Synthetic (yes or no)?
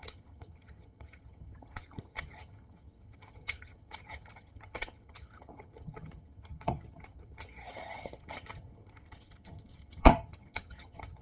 yes